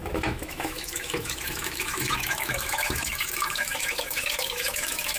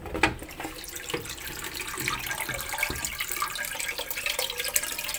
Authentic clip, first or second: second